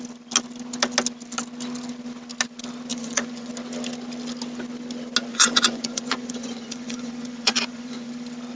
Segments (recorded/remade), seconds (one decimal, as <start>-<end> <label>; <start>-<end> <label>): 0.0-2.9 recorded; 2.9-3.5 remade; 3.5-5.3 recorded; 5.3-8.1 remade; 8.1-8.6 recorded